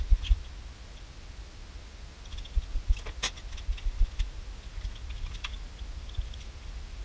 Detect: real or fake real